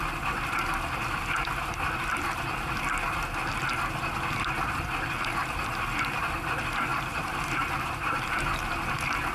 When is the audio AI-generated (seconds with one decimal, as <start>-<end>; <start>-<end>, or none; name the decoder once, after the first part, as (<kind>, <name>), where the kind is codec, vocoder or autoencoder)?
6.9-8.9 (vocoder, BigVGAN v2)